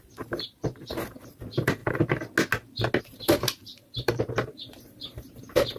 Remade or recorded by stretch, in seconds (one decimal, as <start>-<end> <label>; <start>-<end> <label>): 0.0-1.8 remade; 1.8-3.0 recorded; 3.0-5.8 remade